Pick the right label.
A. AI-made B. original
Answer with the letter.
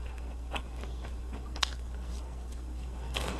A